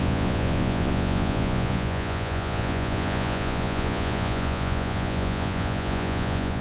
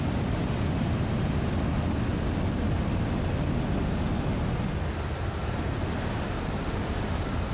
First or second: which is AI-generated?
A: first